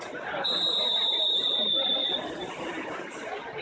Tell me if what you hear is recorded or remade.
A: remade